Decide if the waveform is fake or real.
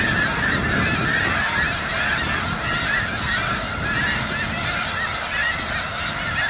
real